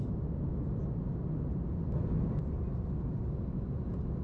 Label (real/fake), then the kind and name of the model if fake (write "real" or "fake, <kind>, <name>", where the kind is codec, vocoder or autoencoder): real